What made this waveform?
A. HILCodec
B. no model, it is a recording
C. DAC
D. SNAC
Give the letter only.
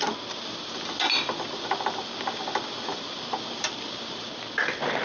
B